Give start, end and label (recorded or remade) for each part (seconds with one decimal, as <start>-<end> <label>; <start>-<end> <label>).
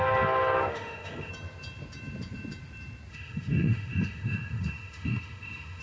0.0-0.7 recorded; 0.7-1.3 remade; 1.3-3.1 recorded; 3.1-5.8 remade